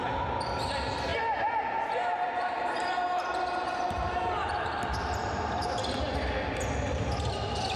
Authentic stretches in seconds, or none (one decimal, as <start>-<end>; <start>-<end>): 0.0-1.1; 5.7-7.8